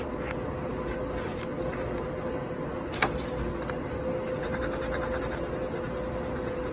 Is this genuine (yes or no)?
yes